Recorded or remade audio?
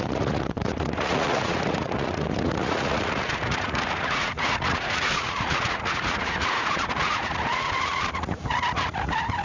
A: remade